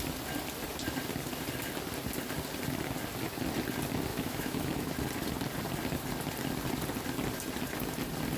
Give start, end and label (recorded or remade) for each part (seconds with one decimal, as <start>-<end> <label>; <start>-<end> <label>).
0.0-4.1 recorded; 4.1-4.9 remade; 4.9-8.4 recorded